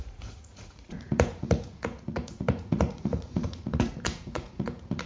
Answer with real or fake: fake